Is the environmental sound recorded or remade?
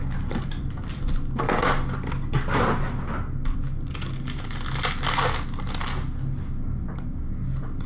recorded